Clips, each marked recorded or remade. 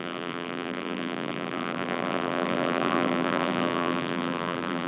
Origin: remade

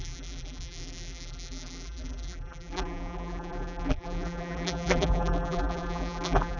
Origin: remade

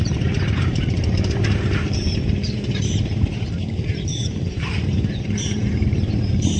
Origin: remade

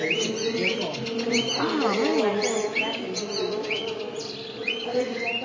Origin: recorded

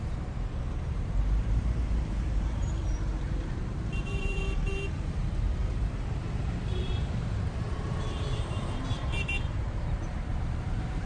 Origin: remade